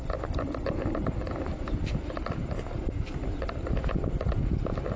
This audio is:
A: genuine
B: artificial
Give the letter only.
A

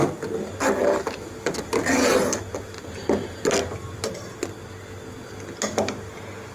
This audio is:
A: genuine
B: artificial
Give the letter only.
A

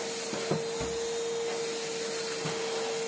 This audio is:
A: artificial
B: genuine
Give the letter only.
B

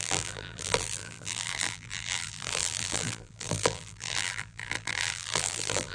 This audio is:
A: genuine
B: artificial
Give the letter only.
B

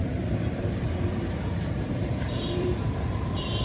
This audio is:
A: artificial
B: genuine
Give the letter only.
A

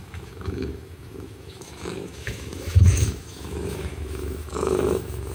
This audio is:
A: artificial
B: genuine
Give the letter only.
A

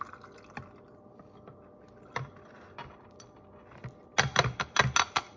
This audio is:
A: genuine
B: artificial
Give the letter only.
A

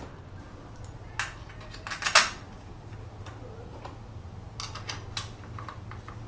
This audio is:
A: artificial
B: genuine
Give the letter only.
B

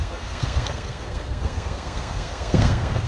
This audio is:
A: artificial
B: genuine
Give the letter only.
A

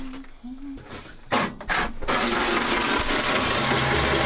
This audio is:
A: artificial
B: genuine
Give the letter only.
B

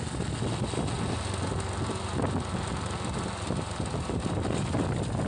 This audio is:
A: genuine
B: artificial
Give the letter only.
A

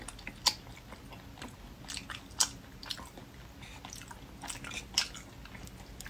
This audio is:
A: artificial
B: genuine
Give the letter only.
B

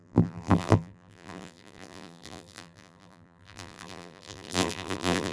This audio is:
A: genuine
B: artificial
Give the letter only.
B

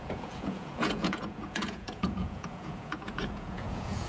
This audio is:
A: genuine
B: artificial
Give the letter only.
B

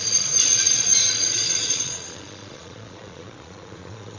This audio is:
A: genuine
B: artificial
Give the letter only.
B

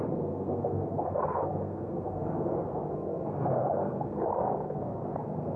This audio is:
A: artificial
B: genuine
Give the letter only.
A